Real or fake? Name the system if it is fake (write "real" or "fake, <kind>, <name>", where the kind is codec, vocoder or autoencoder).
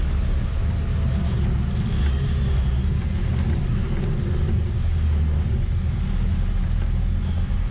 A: real